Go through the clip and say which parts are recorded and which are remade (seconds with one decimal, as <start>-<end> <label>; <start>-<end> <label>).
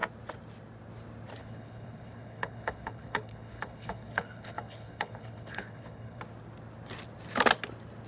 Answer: 0.0-1.4 recorded; 1.4-6.2 remade; 6.2-8.1 recorded